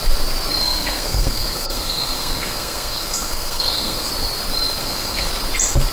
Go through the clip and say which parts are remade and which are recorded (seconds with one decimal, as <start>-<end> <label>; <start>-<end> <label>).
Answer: 0.0-0.6 recorded; 0.6-4.1 remade; 4.1-4.8 recorded; 4.8-5.3 remade; 5.3-5.9 recorded